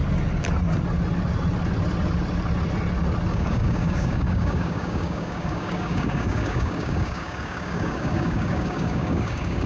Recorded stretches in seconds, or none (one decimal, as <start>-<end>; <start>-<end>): 0.0-3.3